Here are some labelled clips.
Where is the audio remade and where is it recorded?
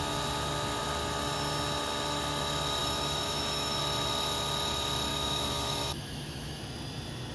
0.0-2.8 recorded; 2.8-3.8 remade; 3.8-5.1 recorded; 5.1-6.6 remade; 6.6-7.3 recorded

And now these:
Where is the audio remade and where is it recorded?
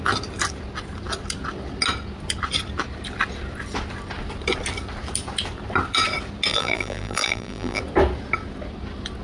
0.0-6.5 recorded; 6.5-7.8 remade; 7.8-9.2 recorded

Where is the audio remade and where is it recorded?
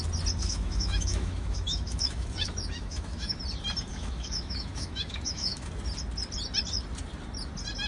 0.0-0.4 recorded; 0.4-3.4 remade; 3.4-3.9 recorded; 3.9-5.7 remade; 5.7-7.9 recorded